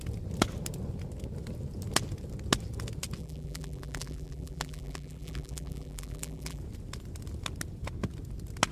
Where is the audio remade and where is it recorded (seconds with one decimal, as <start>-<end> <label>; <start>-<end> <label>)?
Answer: 0.0-3.2 recorded; 3.2-6.6 remade; 6.6-8.7 recorded